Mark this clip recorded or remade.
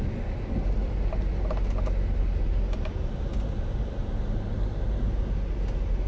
recorded